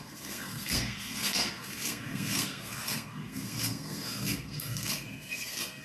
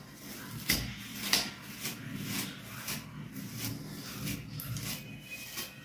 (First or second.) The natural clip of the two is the second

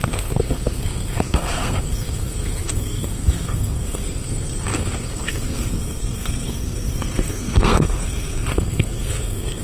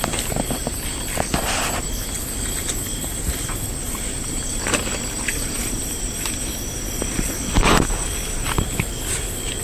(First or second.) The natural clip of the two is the second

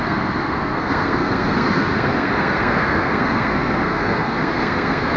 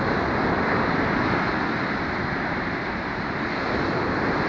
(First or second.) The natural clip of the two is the second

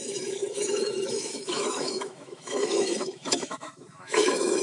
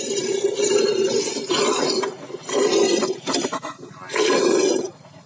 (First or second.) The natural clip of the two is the second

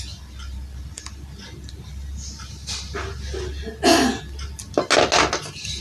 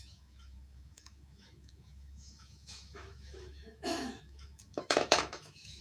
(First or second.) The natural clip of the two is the first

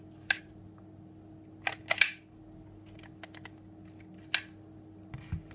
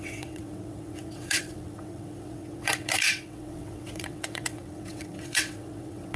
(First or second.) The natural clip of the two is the first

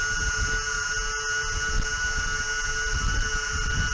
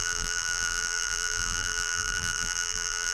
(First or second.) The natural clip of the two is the first